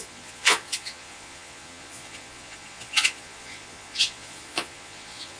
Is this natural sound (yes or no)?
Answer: no